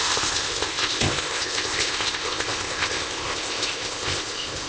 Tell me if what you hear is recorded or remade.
remade